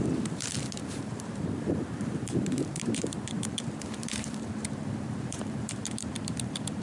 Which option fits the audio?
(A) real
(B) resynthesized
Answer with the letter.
B